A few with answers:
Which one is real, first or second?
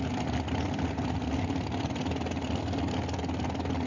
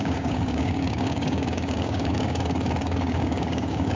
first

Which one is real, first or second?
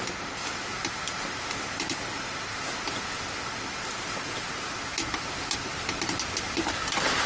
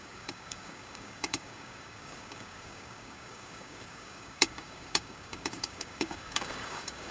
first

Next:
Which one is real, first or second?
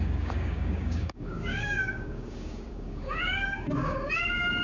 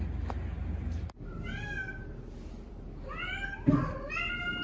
second